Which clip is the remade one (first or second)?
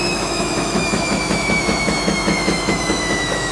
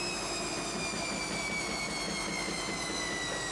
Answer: first